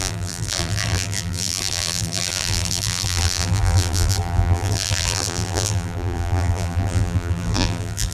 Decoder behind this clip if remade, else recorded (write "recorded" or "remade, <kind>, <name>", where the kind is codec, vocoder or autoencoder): remade, vocoder, BigVGAN v2